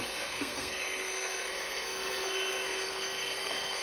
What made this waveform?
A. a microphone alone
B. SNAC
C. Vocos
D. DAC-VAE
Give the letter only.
B